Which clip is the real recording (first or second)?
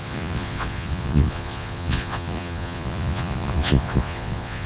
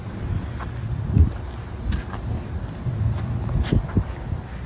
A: second